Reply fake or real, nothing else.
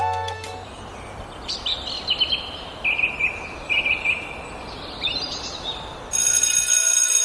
real